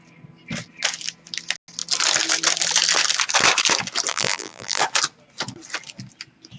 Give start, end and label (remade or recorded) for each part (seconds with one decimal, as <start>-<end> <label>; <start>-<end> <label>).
0.0-4.1 recorded; 4.1-4.8 remade; 4.8-6.6 recorded